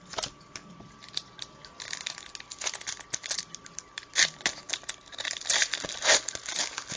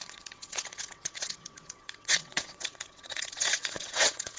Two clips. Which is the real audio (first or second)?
first